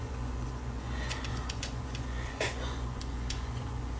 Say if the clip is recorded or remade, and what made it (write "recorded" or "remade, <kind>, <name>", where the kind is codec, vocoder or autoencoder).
remade, vocoder, Vocos